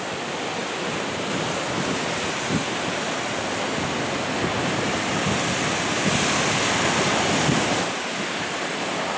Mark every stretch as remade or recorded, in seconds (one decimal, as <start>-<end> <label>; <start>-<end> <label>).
0.0-9.2 recorded